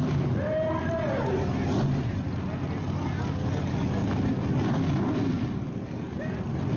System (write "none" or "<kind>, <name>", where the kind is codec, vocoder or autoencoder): none